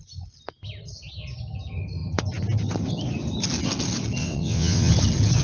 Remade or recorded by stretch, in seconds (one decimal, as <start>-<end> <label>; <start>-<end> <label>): 0.0-4.2 recorded; 4.2-4.9 remade; 4.9-5.4 recorded